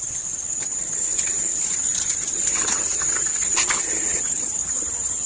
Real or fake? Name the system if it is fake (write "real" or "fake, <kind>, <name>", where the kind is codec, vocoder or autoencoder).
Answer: fake, vocoder, HiFi-GAN